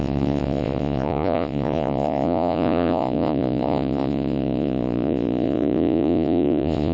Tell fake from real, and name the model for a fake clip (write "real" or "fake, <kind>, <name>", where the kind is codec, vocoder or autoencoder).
fake, vocoder, Vocos